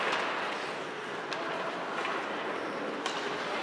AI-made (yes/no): no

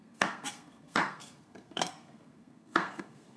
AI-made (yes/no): yes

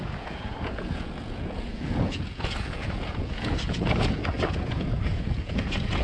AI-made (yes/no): yes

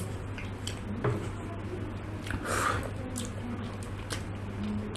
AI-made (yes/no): no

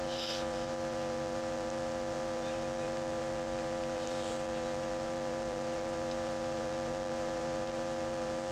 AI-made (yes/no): yes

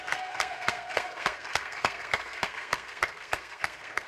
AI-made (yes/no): yes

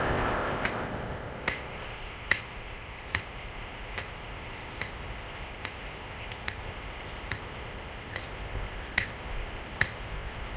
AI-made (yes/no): yes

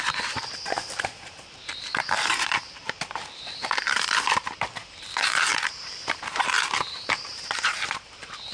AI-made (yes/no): yes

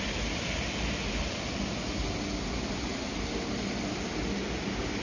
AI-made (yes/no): no